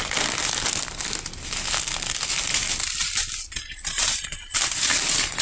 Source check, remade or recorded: recorded